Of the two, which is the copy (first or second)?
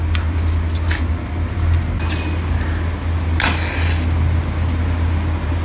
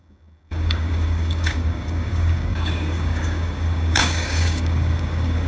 second